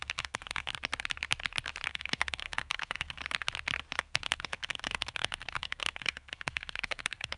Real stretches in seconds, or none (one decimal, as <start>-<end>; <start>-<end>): 0.7-1.9; 3.2-4.0